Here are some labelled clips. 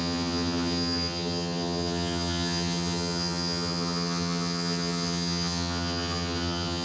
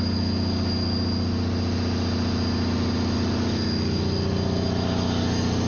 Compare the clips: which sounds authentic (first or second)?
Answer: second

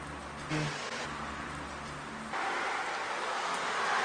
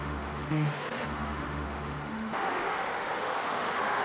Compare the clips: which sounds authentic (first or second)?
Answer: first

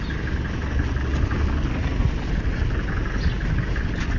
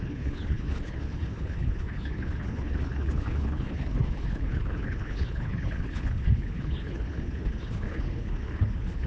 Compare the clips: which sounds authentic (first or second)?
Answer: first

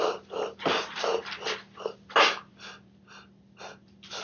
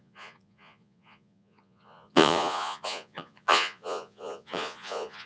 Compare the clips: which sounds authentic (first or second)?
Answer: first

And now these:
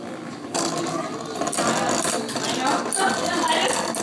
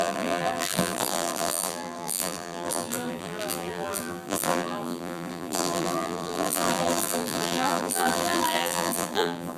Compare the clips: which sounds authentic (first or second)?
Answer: first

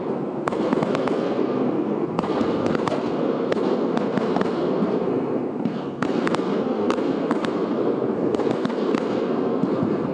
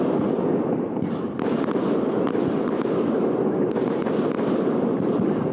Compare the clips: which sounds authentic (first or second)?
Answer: second